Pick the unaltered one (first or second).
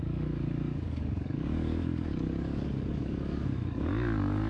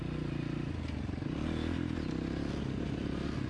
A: second